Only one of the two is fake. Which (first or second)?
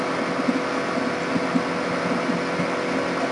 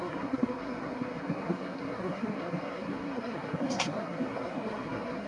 second